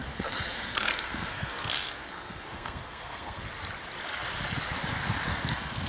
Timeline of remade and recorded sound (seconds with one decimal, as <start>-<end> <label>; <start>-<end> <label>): 0.0-3.5 remade; 3.5-5.3 recorded; 5.3-5.9 remade